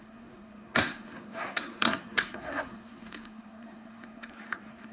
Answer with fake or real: fake